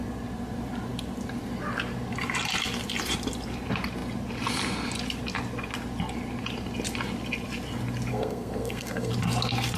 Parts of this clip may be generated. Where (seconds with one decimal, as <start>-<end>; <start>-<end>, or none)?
8.1-9.1